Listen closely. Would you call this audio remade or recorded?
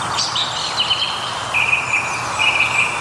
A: recorded